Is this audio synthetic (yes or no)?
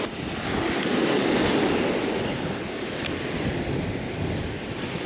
no